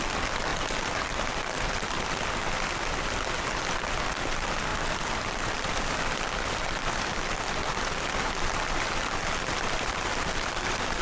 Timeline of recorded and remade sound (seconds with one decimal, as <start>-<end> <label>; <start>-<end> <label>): 0.0-11.0 recorded